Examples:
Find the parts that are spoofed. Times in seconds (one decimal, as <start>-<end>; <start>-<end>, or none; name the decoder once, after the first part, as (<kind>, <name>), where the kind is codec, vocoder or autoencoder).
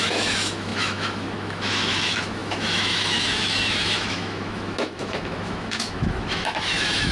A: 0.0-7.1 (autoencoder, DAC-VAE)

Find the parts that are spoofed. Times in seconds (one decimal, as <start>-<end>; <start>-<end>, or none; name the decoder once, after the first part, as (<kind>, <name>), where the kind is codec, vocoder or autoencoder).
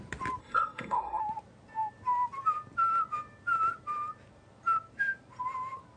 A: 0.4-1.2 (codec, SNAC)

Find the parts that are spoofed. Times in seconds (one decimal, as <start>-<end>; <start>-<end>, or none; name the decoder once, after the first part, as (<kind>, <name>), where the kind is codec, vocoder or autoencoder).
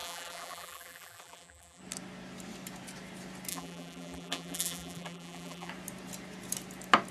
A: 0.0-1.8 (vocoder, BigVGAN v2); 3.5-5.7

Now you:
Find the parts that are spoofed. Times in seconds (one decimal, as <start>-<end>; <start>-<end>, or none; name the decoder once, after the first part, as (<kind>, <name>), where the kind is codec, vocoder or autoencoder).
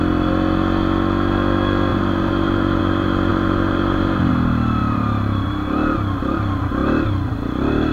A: 1.9-2.8 (vocoder, BigVGAN v2); 3.3-4.3; 4.8-5.5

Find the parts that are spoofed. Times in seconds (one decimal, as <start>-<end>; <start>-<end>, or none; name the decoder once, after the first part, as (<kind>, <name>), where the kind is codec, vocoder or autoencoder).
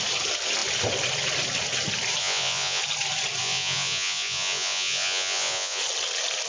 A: 2.2-2.8 (vocoder, Vocos); 3.4-5.8